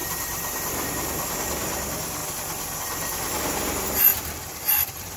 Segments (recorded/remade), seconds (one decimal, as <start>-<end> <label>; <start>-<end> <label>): 0.0-0.9 remade; 0.9-4.1 recorded; 4.1-5.2 remade